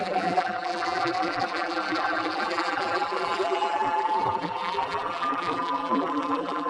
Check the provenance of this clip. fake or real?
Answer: fake